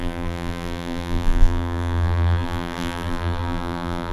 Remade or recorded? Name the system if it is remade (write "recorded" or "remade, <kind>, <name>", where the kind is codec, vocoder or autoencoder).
remade, vocoder, BigVGAN v2